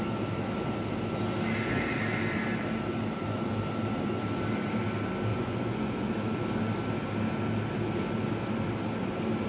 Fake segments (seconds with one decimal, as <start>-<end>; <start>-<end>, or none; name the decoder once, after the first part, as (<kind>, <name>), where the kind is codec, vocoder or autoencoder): 5.3-6.1 (vocoder, Vocos)